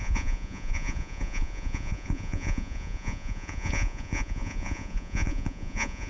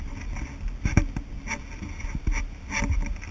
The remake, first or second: first